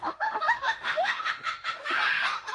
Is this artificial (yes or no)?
yes